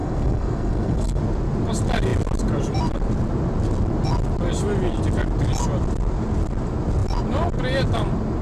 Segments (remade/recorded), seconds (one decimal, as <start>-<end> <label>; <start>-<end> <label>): 0.0-1.2 remade; 1.2-8.4 recorded